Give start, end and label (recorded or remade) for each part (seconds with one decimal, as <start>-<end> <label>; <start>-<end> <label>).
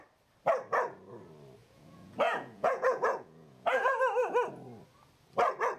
0.0-1.6 recorded; 1.6-4.0 remade; 4.0-5.8 recorded